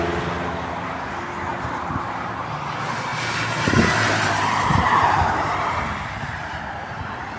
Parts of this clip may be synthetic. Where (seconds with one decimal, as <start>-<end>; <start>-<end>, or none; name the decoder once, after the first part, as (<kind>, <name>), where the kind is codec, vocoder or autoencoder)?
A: 1.5-2.7 (vocoder, BigVGAN v2); 3.1-6.6